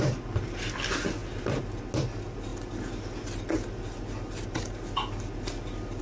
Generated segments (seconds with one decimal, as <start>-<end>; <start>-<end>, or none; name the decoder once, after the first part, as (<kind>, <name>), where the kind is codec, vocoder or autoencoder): none